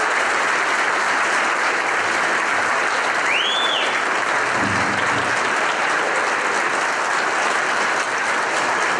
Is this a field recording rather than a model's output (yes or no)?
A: yes